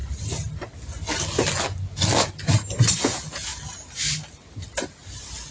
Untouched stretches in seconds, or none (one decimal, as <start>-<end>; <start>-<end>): 0.0-2.9; 3.5-5.5